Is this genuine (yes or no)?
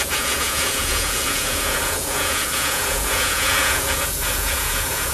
no